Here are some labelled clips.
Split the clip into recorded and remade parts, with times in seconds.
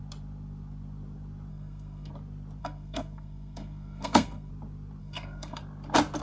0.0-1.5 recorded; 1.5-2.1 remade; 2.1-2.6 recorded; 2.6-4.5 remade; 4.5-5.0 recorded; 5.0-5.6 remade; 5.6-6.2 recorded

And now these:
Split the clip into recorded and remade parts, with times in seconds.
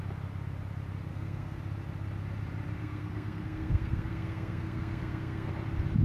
0.0-1.1 recorded; 1.1-1.6 remade; 1.6-2.8 recorded; 2.8-5.5 remade; 5.5-6.0 recorded